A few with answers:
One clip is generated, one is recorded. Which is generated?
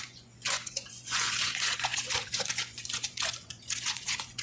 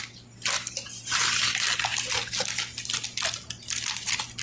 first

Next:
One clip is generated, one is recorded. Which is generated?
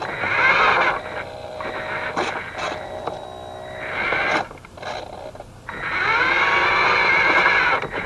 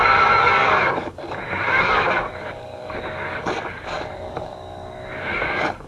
second